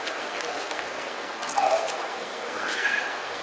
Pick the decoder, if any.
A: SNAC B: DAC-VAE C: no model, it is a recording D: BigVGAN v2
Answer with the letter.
A